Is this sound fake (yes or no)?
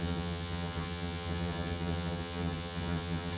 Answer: yes